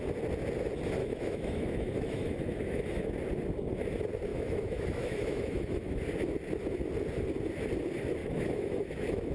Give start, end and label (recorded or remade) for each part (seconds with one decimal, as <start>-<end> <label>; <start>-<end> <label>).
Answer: 0.0-1.0 recorded; 1.0-3.1 remade; 3.1-4.3 recorded; 4.3-6.0 remade; 6.0-8.2 recorded; 8.2-9.3 remade